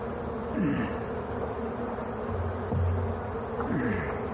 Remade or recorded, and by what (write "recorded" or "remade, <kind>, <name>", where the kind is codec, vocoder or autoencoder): recorded